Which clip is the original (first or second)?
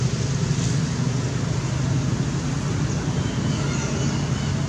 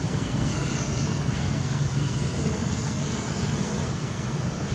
first